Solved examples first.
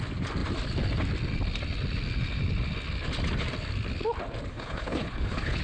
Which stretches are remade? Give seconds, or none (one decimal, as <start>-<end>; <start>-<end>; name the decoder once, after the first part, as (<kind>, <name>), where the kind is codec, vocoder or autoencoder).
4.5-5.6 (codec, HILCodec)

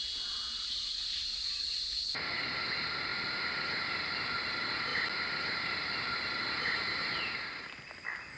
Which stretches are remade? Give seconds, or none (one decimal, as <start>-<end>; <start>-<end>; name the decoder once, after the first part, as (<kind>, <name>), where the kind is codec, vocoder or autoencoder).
none

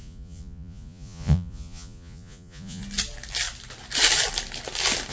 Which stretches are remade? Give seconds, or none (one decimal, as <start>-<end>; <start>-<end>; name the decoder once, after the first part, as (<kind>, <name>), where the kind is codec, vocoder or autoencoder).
0.0-2.8 (vocoder, Vocos)